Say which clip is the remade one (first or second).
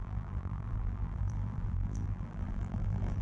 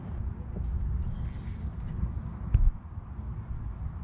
first